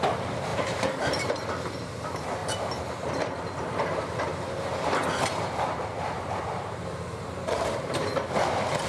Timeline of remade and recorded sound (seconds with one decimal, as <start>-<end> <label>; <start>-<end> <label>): 0.0-2.4 remade; 2.4-3.2 recorded; 3.2-8.1 remade; 8.1-8.9 recorded